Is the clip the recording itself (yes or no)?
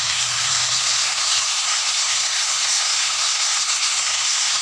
no